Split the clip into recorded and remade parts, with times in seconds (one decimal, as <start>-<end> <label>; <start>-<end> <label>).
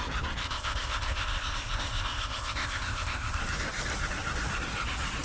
0.0-0.4 recorded; 0.4-3.4 remade; 3.4-5.2 recorded